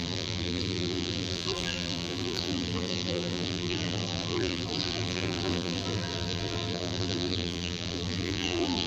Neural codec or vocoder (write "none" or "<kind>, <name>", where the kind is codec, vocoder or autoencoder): vocoder, BigVGAN v2